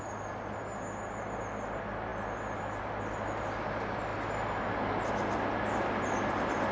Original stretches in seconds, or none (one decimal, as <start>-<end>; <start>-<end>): 0.0-6.7